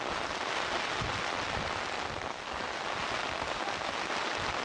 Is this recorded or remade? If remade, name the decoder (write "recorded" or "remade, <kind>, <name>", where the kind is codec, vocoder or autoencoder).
recorded